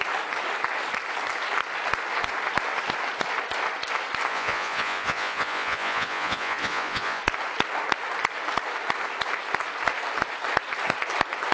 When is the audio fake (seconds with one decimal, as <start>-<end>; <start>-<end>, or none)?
4.3-7.2